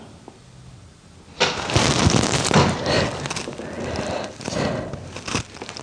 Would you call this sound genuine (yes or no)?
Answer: yes